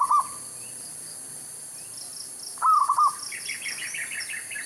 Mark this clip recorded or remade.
recorded